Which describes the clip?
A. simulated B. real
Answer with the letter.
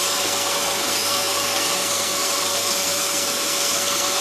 A